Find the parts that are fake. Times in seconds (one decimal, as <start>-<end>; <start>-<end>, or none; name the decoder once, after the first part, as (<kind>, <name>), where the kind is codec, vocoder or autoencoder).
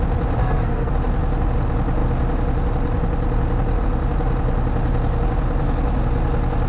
0.4-0.9 (codec, SNAC)